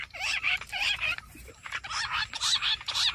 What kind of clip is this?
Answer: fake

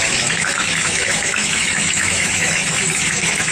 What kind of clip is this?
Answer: fake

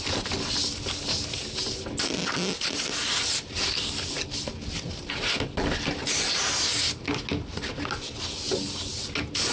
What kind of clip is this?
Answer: real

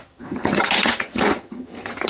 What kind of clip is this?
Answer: fake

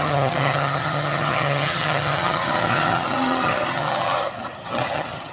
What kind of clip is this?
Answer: fake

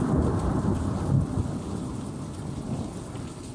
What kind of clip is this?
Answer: real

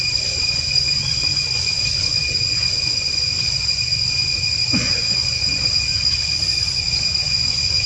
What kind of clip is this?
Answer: fake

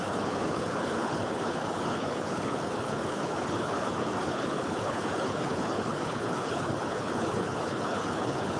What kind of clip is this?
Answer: fake